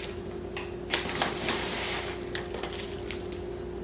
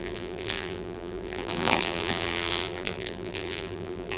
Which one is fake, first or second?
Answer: second